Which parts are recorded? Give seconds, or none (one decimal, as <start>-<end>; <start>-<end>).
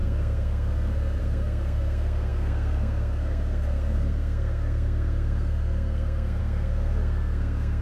none